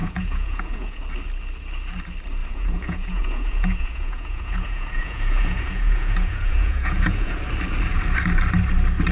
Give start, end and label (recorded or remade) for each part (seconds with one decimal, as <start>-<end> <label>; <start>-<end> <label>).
0.0-1.0 remade; 1.0-2.4 recorded; 2.4-7.4 remade; 7.4-9.1 recorded